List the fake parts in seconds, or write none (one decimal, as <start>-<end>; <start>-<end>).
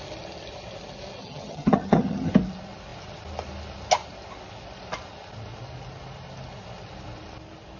1.2-2.3